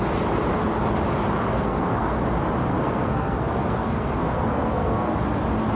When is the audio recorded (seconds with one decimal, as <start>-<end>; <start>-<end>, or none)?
0.0-1.5; 2.2-2.7; 5.2-5.8

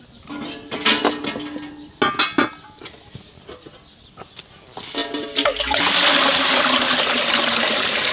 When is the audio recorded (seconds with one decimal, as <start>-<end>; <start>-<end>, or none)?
0.0-8.1

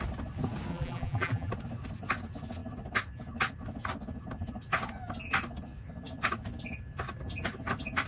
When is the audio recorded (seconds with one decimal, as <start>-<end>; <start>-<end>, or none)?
0.0-0.7; 1.5-8.1

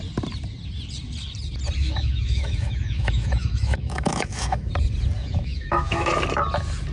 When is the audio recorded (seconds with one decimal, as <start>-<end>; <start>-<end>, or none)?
0.0-1.8; 4.7-5.2; 6.1-6.9